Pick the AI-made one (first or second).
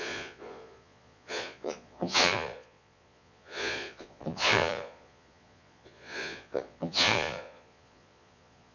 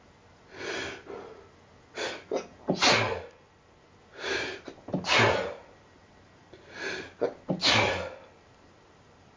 first